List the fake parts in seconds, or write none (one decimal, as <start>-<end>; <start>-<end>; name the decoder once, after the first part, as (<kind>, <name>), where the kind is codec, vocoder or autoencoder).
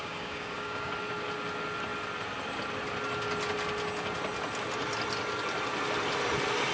0.0-0.9 (codec, DAC)